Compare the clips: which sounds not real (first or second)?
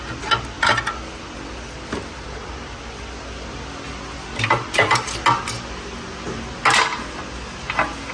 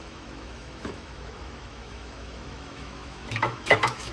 second